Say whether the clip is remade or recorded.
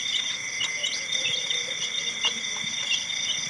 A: recorded